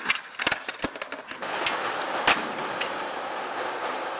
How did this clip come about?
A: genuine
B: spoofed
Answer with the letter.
A